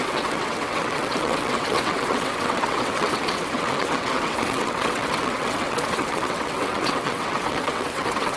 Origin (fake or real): fake